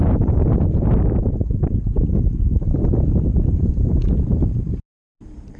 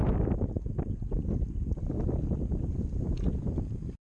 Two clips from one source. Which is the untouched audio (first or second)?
second